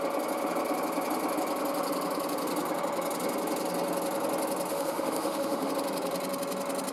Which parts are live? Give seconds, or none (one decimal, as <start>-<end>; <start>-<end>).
0.0-4.7; 5.7-6.9